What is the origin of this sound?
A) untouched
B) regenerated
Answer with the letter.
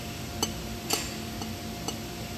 A